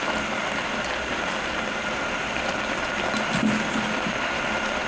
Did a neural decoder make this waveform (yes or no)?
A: no